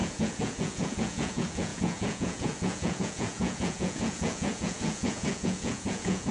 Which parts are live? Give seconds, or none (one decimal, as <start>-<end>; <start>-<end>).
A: none